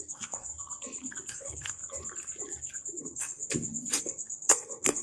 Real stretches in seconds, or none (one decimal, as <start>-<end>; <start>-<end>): 0.5-1.3; 1.8-3.0; 3.4-4.0